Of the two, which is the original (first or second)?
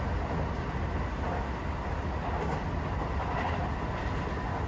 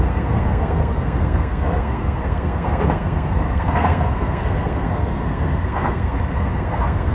first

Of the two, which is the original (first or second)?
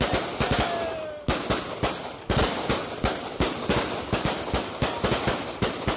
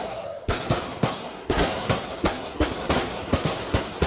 first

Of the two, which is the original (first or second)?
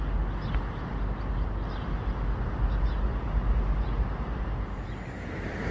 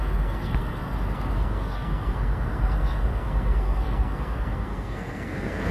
first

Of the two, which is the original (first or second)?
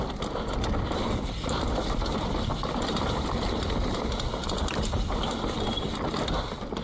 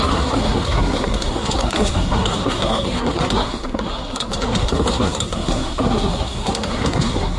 first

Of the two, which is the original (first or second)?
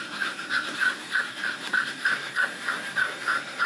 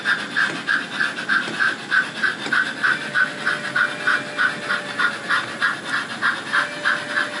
second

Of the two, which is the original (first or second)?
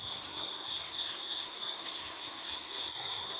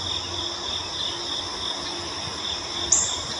second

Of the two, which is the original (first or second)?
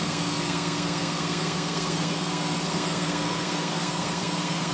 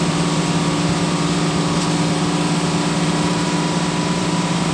second